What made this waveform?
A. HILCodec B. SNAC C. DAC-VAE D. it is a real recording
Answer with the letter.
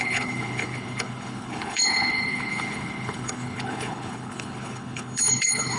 A